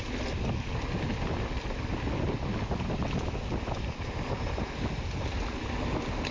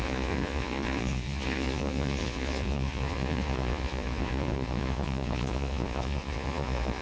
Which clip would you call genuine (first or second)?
first